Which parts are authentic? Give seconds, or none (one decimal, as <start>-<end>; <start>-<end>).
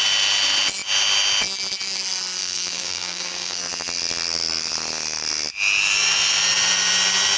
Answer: 0.0-2.4; 3.6-7.4